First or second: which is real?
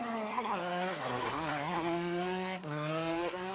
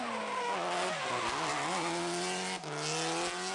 second